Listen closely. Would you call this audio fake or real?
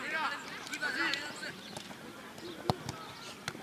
real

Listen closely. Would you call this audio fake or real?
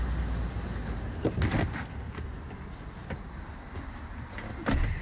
real